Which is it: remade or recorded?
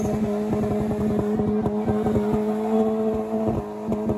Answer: recorded